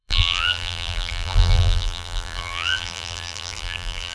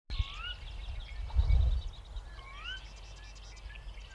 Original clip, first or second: second